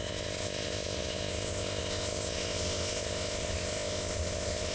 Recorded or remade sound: remade